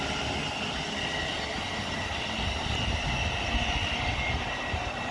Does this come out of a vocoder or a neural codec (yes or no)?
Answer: no